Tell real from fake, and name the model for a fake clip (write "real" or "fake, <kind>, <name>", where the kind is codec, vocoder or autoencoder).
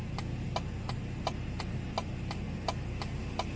real